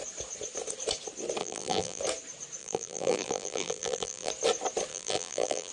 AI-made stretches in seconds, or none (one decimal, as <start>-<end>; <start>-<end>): 1.4-2.0; 2.6-4.3; 4.9-5.7